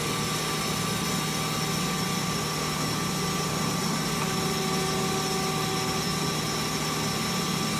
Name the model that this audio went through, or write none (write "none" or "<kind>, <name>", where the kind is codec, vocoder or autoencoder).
none